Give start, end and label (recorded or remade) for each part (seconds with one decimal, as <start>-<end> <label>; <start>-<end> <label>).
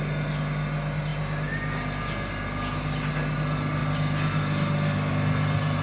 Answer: 0.0-5.8 recorded